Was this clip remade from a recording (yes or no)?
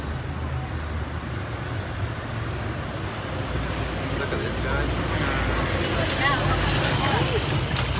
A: no